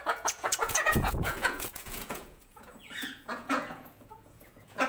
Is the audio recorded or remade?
remade